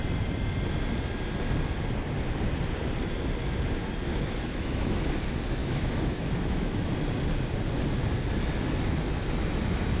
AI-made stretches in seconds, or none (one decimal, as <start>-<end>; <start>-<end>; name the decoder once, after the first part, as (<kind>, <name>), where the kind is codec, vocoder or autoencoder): 4.1-5.0 (autoencoder, DAC-VAE); 5.6-6.9